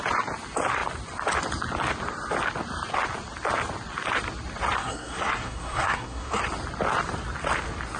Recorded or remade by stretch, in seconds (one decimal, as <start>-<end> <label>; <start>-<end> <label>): 0.0-4.8 recorded; 4.8-6.4 remade; 6.4-8.0 recorded